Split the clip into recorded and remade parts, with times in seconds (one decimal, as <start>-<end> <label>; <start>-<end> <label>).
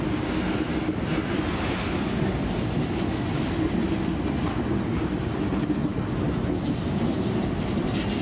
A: 0.0-8.2 recorded